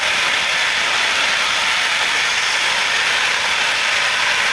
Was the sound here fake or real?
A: real